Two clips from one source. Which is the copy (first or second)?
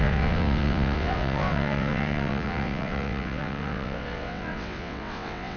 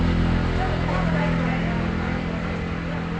first